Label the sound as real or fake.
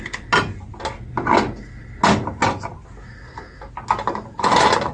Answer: real